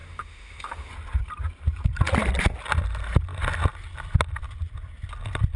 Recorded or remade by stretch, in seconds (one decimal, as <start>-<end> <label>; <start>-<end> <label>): 0.0-0.9 remade; 0.9-5.6 recorded